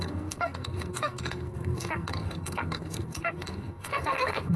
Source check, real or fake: fake